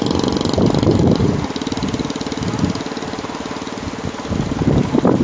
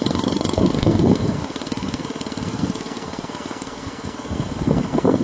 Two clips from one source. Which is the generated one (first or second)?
second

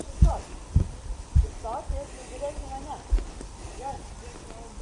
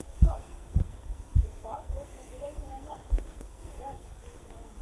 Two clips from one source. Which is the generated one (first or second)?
second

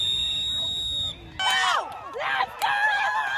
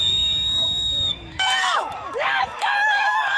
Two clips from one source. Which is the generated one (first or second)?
second